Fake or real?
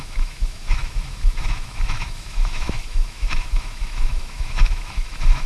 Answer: fake